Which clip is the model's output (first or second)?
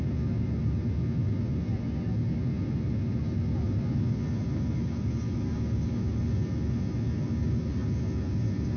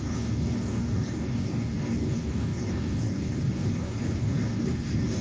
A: second